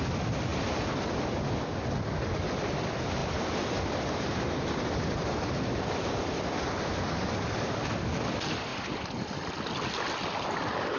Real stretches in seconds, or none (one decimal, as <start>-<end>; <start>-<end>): 0.0-0.5; 1.6-3.2; 8.0-8.7; 9.8-11.0